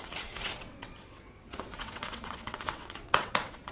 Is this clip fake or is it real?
fake